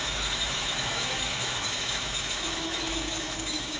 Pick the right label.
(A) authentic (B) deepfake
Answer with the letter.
B